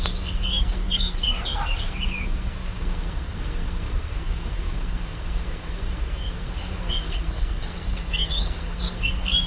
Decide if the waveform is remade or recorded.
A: remade